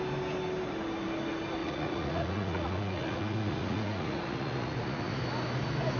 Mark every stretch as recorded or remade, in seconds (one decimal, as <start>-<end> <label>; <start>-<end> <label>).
0.0-1.6 recorded; 1.6-5.2 remade; 5.2-6.0 recorded